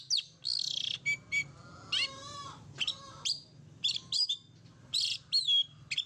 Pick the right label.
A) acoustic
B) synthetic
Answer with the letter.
A